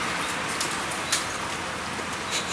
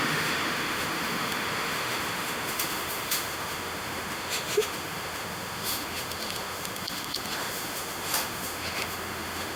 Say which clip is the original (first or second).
first